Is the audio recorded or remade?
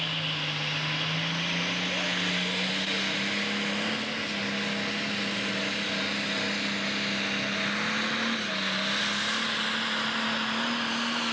recorded